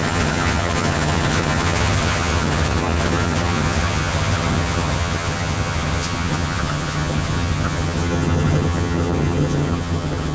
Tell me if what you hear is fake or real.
fake